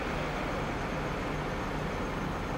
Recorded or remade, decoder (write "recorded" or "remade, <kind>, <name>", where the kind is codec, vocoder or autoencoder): recorded